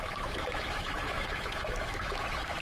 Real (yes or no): no